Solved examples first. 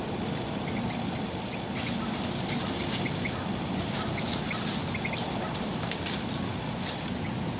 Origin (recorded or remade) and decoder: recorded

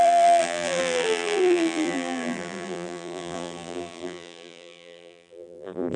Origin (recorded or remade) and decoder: remade, vocoder, BigVGAN v2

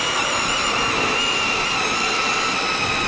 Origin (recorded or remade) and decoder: recorded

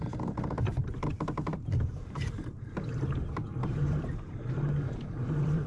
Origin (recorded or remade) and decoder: remade, vocoder, BigVGAN v2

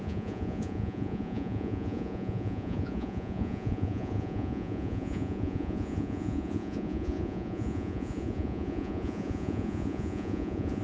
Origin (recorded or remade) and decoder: remade, vocoder, Vocos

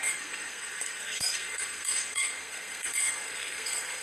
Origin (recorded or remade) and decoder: remade, codec, SNAC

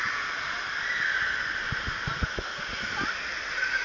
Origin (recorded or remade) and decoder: recorded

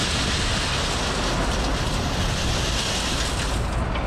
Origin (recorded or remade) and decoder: recorded